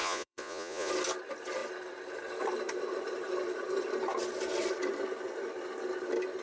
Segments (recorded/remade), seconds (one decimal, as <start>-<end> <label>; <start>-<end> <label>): 0.0-0.9 remade; 0.9-6.4 recorded